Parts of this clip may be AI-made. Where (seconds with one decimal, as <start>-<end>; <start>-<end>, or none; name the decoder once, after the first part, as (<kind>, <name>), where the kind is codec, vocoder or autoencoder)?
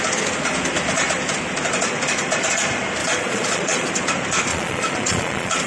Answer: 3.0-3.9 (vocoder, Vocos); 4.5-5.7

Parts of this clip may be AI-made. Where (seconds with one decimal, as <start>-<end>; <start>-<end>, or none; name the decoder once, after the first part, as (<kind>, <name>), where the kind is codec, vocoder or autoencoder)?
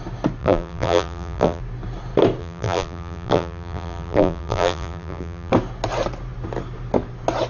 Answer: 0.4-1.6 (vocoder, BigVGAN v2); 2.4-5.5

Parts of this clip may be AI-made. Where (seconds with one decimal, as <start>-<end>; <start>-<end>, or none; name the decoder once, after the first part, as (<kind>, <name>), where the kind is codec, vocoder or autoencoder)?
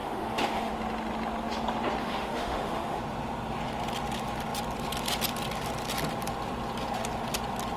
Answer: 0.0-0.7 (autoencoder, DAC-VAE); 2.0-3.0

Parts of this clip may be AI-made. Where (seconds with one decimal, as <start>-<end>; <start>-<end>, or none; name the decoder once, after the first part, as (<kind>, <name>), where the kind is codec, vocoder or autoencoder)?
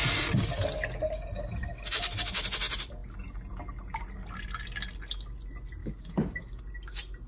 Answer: 5.8-6.6 (codec, DAC)